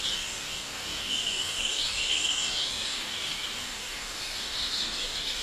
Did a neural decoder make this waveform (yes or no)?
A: yes